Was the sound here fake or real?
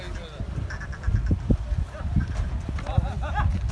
real